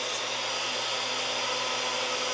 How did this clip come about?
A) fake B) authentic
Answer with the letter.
B